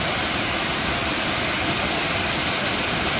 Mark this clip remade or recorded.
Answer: recorded